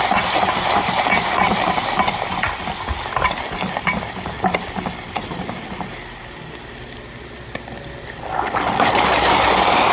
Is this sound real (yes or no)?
yes